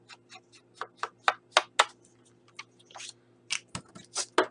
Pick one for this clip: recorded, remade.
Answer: recorded